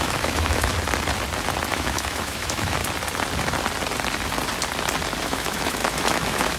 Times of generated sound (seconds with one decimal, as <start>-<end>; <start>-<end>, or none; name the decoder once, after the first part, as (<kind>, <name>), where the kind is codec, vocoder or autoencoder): 0.0-0.7 (autoencoder, DAC-VAE); 1.7-2.8; 5.2-6.6